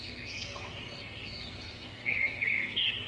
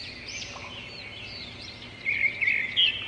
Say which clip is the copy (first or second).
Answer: first